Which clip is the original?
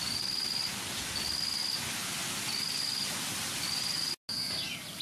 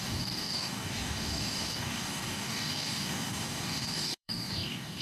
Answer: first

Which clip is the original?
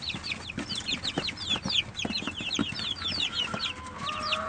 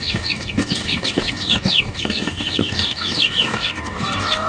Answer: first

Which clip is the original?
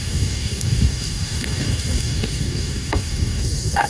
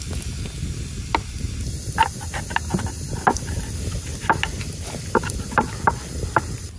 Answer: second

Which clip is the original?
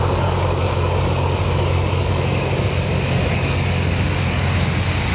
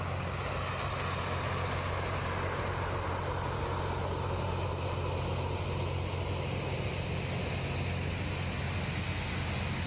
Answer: second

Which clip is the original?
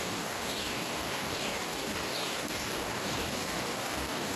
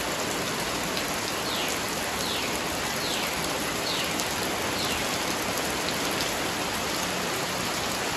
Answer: second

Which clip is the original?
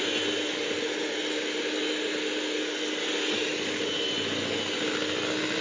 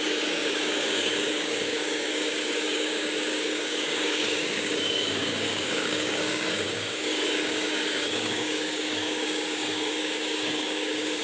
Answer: first